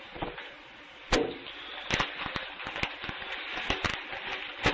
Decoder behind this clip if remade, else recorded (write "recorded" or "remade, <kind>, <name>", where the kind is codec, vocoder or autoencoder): recorded